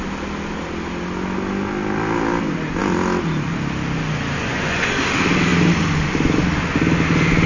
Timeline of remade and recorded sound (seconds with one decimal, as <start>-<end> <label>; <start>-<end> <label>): 0.0-4.4 recorded; 4.4-4.9 remade; 4.9-7.5 recorded